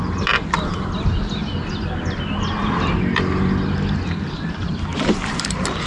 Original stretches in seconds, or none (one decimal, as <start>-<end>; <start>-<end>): 0.0-5.9